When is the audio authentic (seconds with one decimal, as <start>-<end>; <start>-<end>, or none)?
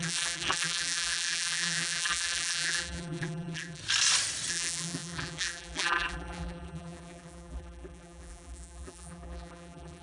3.8-4.5